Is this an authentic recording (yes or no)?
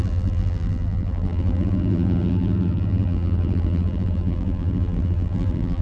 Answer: no